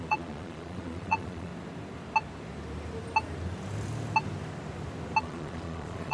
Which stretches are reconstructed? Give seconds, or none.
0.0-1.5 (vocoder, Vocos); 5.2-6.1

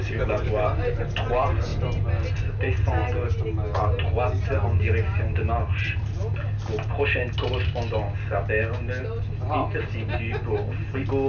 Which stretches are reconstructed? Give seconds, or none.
none